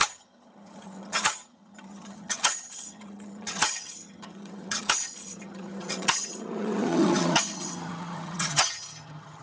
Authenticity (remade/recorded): remade